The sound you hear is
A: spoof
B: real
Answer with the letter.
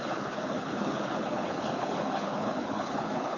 A